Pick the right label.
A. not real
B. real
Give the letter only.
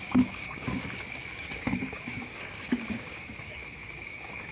A